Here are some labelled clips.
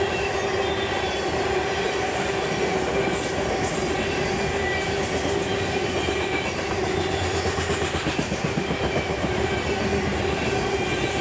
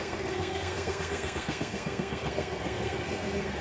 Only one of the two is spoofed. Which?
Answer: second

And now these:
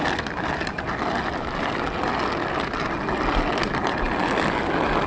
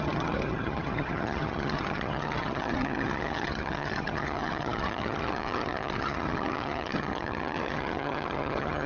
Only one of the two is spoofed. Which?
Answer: second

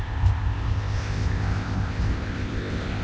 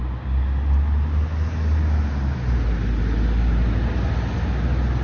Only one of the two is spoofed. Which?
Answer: first